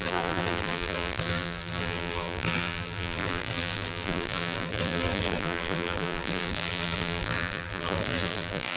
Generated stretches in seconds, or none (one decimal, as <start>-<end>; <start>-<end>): 0.0-8.8